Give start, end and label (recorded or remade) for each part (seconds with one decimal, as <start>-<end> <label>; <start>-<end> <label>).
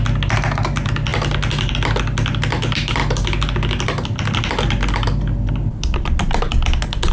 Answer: 0.0-7.1 recorded